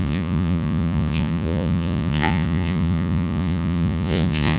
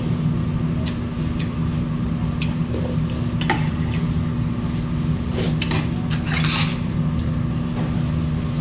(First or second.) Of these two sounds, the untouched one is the second